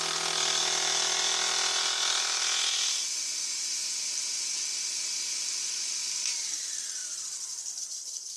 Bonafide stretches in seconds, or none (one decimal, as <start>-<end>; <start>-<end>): 0.0-3.4; 4.0-8.4